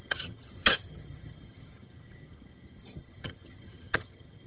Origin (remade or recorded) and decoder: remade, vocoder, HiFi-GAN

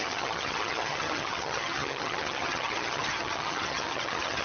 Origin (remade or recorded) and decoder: remade, vocoder, HiFi-GAN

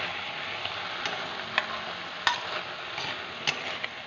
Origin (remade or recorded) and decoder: recorded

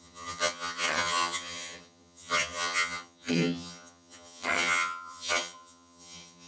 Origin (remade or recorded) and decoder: remade, vocoder, HiFi-GAN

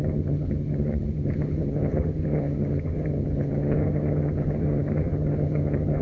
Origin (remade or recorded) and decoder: remade, vocoder, HiFi-GAN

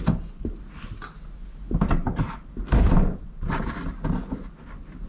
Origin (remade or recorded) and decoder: recorded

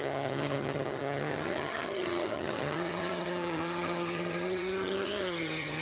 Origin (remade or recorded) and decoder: remade, vocoder, HiFi-GAN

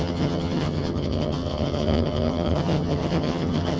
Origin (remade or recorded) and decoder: remade, vocoder, HiFi-GAN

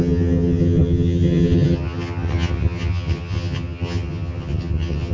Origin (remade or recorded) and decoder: remade, vocoder, HiFi-GAN